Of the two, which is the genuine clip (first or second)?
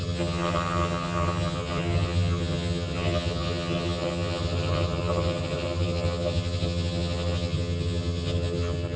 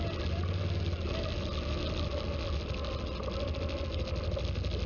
second